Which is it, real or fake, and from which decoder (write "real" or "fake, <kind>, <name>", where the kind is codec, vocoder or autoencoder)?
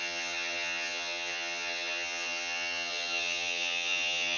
fake, vocoder, HiFi-GAN